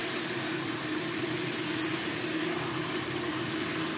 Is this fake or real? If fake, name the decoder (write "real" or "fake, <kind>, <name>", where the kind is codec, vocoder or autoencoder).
fake, vocoder, BigVGAN v2